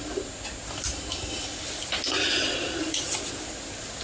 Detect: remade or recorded recorded